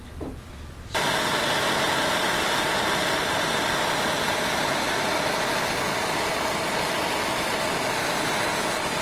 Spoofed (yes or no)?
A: no